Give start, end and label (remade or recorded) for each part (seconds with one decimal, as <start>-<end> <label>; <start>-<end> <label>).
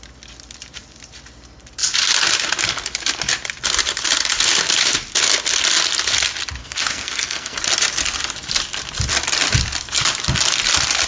0.0-6.6 recorded; 6.6-7.6 remade; 7.6-11.1 recorded